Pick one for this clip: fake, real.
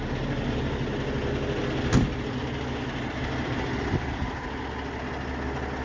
real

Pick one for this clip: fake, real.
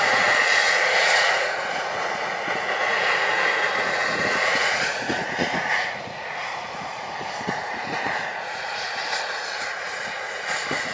fake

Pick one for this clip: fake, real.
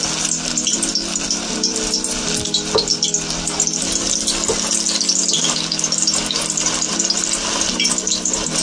real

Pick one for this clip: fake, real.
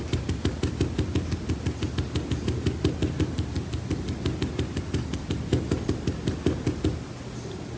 real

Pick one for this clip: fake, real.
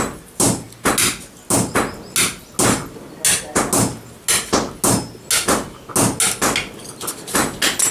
real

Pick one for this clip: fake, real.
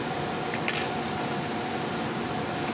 real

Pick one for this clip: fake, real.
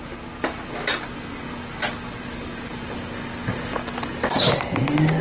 real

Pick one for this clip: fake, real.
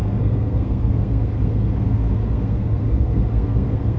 fake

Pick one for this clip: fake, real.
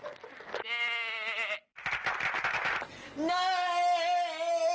real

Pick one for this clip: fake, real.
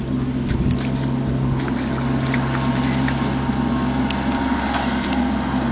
real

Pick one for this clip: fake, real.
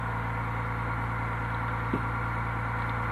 real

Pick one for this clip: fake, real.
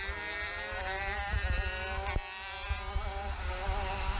real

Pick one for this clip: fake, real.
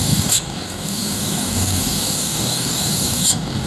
fake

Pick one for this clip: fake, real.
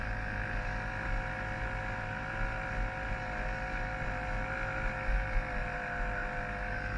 real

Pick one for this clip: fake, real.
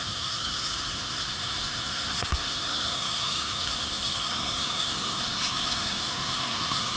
fake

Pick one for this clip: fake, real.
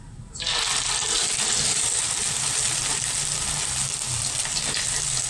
real